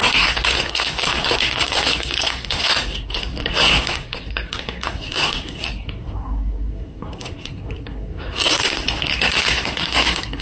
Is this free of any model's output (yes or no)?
no